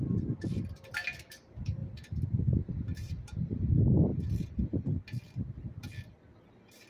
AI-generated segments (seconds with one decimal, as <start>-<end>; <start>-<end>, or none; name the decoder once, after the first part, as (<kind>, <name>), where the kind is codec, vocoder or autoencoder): 1.8-2.4 (vocoder, BigVGAN v2)